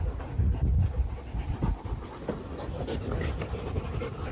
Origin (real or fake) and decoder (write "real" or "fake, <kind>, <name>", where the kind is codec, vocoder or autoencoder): real